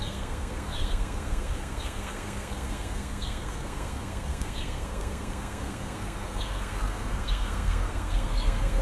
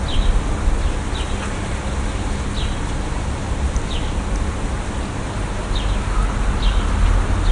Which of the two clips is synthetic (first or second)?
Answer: first